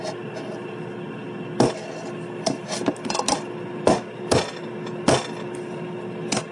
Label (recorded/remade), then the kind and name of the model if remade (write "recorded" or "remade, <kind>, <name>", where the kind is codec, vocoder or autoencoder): recorded